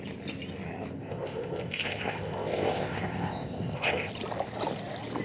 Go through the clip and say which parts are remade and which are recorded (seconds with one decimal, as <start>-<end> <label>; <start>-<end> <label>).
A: 0.0-1.0 recorded; 1.0-4.1 remade; 4.1-5.2 recorded